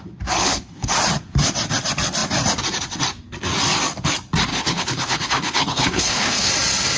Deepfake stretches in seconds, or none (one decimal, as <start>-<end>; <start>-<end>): 0.4-0.9; 4.5-6.5